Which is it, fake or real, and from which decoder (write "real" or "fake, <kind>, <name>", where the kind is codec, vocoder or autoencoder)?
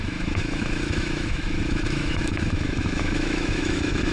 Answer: fake, autoencoder, DAC-VAE